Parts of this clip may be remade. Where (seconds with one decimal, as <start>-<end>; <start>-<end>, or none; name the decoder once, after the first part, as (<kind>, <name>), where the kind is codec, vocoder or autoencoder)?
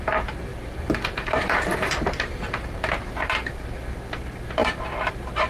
0.5-2.8 (vocoder, BigVGAN v2); 4.6-5.1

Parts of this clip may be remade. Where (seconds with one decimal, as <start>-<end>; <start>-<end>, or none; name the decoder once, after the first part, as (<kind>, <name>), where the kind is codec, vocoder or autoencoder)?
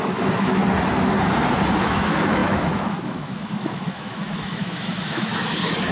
0.0-0.6 (autoencoder, DAC-VAE); 1.8-5.3